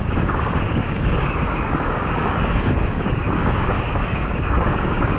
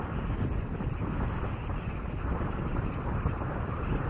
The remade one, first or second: first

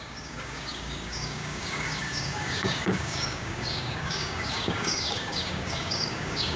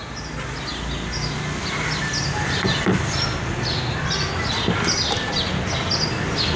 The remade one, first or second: first